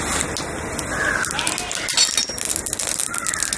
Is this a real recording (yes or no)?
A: yes